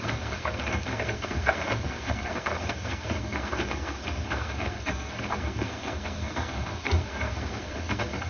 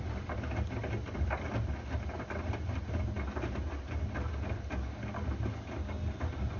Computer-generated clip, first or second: first